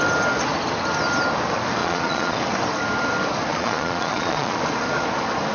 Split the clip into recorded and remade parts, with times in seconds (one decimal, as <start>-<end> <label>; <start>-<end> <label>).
0.0-1.8 recorded; 1.8-2.4 remade; 2.4-3.5 recorded; 3.5-4.6 remade; 4.6-5.5 recorded